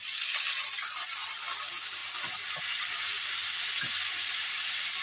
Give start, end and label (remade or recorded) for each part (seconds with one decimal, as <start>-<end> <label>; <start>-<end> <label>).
0.0-5.0 recorded